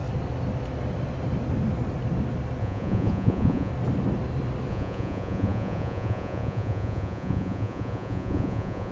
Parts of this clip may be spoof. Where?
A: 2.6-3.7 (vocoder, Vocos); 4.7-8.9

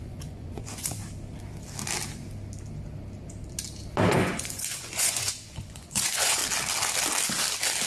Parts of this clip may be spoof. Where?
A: 0.0-1.0 (vocoder, Vocos); 4.1-6.4

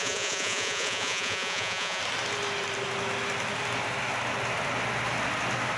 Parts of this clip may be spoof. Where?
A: 0.0-2.0 (vocoder, Vocos)

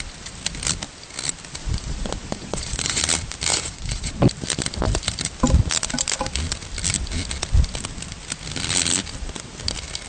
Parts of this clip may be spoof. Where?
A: 1.6-3.0 (vocoder, Vocos); 3.5-4.1

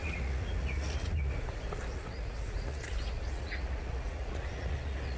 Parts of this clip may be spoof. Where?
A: 0.0-1.4 (vocoder, Vocos); 1.9-5.2